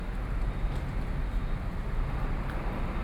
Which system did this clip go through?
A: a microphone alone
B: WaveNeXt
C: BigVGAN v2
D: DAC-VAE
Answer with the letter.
A